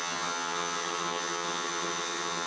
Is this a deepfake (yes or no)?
yes